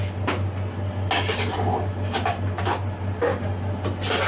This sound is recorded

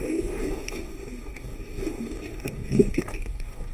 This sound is remade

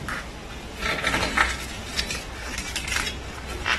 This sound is recorded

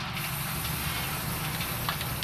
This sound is recorded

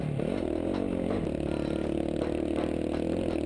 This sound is recorded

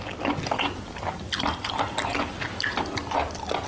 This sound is recorded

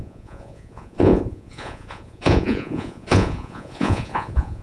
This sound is remade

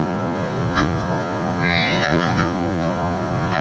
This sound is remade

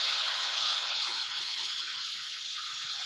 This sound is remade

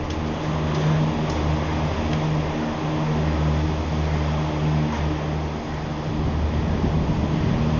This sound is recorded